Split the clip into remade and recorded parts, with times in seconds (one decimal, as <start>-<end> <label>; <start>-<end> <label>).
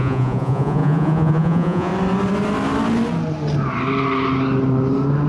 0.0-1.9 remade; 1.9-5.3 recorded